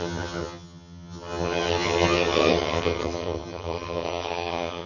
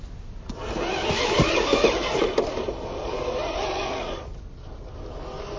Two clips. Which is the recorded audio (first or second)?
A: second